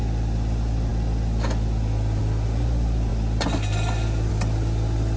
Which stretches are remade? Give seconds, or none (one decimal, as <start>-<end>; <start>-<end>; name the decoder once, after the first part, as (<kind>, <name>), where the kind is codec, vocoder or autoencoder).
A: none